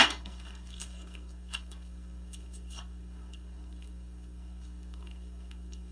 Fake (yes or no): yes